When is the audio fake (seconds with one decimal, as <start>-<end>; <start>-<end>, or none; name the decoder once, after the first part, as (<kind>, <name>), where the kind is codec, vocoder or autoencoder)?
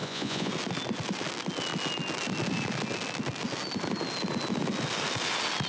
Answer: 0.0-0.5 (vocoder, Vocos)